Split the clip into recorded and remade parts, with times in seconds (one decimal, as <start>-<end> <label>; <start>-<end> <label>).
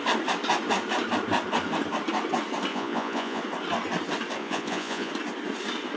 0.0-2.7 recorded; 2.7-3.4 remade; 3.4-4.4 recorded; 4.4-5.1 remade; 5.1-6.0 recorded